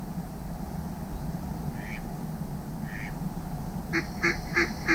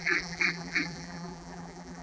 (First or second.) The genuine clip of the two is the first